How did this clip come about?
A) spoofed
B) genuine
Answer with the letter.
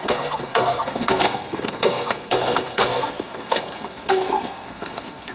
A